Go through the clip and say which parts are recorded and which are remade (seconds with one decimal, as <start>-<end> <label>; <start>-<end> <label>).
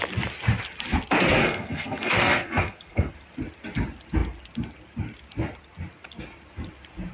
0.0-1.4 recorded; 1.4-3.1 remade; 3.1-7.1 recorded